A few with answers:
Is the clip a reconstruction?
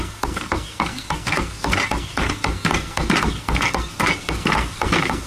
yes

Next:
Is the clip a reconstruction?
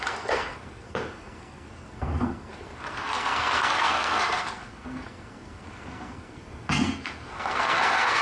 yes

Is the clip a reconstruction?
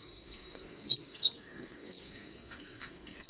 yes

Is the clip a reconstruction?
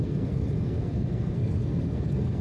yes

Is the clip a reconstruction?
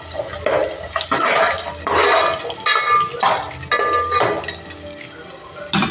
no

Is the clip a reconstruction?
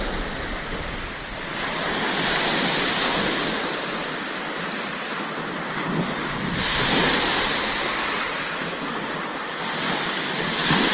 no